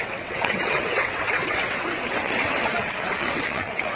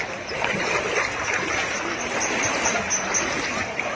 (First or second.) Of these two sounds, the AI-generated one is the first